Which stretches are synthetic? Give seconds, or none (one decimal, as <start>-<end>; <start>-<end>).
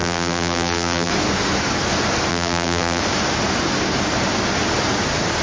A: 0.0-1.1; 2.3-3.0